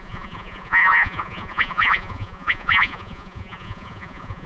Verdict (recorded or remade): remade